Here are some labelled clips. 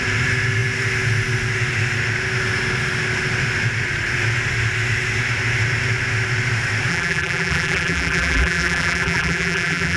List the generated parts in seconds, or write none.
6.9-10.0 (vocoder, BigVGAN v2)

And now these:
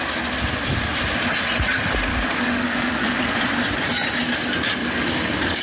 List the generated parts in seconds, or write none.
2.1-3.4 (codec, DAC); 4.8-5.6